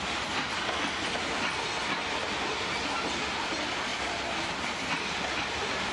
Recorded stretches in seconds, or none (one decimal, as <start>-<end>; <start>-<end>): 0.0-5.9